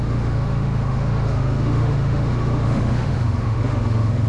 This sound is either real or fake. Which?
fake